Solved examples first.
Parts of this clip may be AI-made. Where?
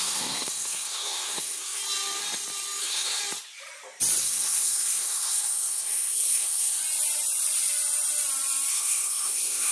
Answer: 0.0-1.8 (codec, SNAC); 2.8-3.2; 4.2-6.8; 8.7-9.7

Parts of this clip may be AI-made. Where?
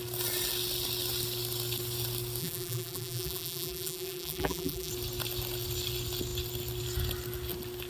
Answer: 2.4-4.9 (vocoder, BigVGAN v2)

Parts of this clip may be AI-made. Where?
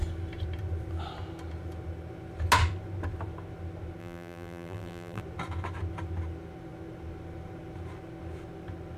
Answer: 4.0-5.2 (vocoder, BigVGAN v2)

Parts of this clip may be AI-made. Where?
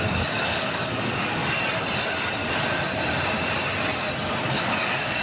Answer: 0.0-1.4 (codec, DAC); 4.5-5.2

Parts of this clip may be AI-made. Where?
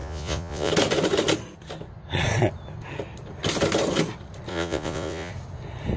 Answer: 0.0-0.7 (vocoder, Vocos); 4.5-5.3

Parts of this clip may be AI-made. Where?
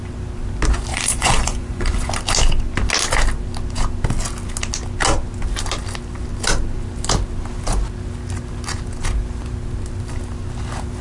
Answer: 0.9-2.1 (vocoder, Vocos)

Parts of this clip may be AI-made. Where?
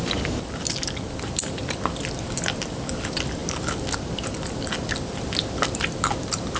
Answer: none